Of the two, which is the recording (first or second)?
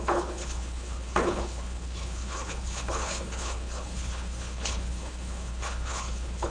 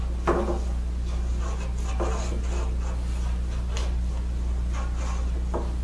second